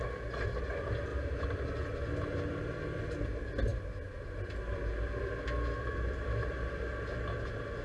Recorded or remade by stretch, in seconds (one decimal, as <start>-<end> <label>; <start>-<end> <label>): 0.0-1.1 recorded; 1.1-3.0 remade; 3.0-3.7 recorded; 3.7-6.9 remade; 6.9-7.8 recorded

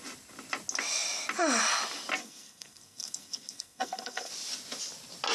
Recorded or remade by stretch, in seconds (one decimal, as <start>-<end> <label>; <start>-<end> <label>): 0.0-2.2 recorded; 2.2-4.3 remade; 4.3-5.3 recorded